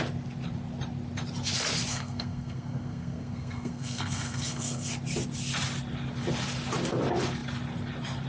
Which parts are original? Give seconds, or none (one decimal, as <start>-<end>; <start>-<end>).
0.0-1.9; 4.9-8.3